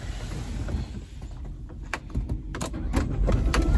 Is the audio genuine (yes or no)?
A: yes